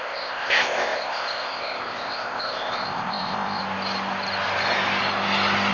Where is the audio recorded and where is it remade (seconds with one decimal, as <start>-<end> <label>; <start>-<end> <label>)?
0.0-3.6 remade; 3.6-5.7 recorded